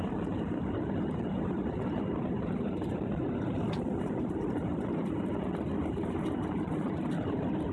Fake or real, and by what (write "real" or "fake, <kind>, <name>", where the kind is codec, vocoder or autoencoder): real